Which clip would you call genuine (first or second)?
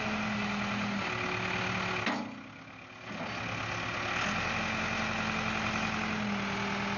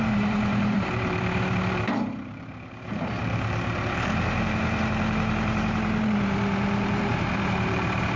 first